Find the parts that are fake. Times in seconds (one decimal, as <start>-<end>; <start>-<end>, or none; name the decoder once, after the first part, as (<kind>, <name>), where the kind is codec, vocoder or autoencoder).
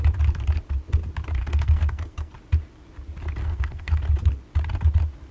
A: 1.4-2.3 (codec, SNAC); 3.4-4.0